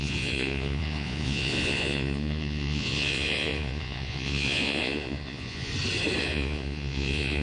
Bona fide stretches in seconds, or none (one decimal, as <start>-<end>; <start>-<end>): 5.7-6.2